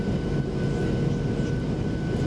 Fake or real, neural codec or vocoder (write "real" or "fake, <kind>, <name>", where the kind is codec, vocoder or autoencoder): real